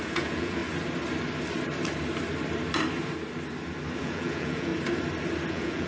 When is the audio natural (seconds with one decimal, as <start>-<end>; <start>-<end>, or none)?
0.6-4.0; 4.7-5.5